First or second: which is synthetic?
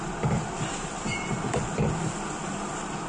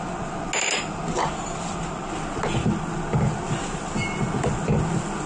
first